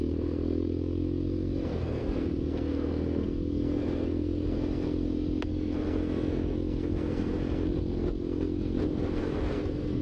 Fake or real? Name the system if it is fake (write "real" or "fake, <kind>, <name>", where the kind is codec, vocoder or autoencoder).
fake, codec, SNAC